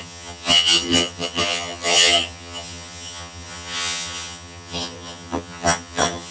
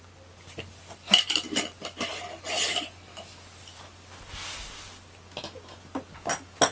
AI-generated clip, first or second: first